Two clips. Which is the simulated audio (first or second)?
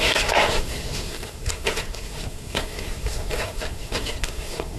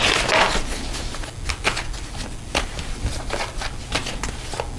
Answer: first